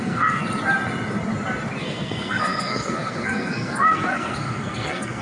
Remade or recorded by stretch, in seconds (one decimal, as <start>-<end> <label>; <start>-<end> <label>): 0.0-0.4 remade; 0.4-1.8 recorded; 1.8-5.2 remade